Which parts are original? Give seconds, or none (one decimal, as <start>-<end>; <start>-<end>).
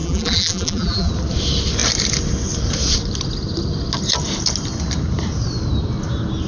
1.1-6.5